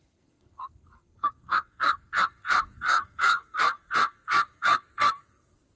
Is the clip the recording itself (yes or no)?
no